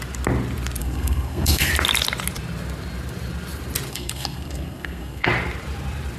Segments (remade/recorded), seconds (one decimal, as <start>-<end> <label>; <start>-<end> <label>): 0.0-0.8 recorded; 0.8-1.7 remade; 1.7-3.9 recorded; 3.9-5.3 remade; 5.3-6.2 recorded